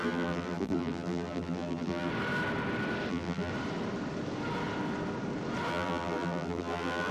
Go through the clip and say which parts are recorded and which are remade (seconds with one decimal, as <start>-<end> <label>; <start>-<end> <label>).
0.0-2.1 remade; 2.1-3.1 recorded; 3.1-3.5 remade; 3.5-5.7 recorded; 5.7-7.1 remade